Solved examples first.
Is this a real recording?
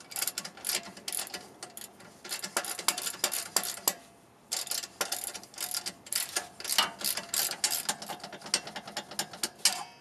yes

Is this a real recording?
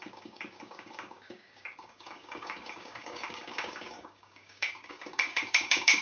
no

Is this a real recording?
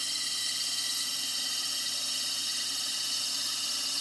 yes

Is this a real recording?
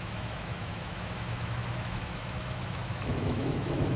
no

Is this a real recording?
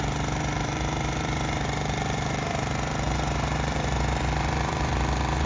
no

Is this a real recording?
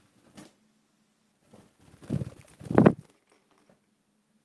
yes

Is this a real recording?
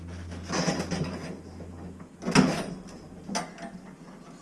yes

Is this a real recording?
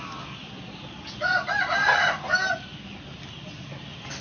yes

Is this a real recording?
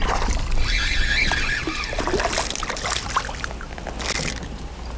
yes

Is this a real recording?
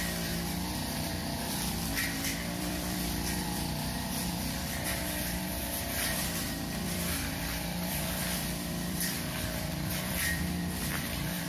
no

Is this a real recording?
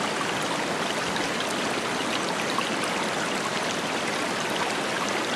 yes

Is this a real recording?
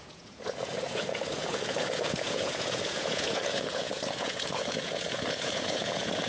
no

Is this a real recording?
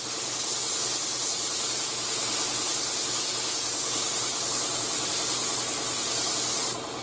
yes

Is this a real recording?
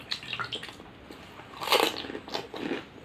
yes